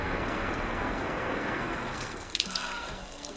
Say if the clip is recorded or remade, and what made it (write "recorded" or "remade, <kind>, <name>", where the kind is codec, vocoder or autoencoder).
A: remade, codec, SNAC